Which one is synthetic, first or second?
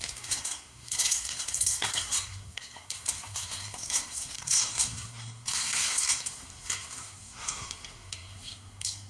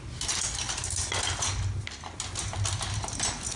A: first